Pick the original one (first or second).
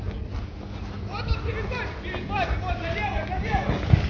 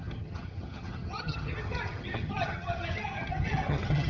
first